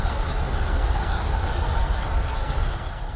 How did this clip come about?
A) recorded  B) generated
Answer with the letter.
B